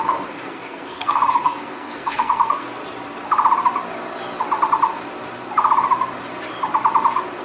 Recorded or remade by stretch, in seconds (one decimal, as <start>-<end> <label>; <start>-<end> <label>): 0.0-2.8 remade; 2.8-7.4 recorded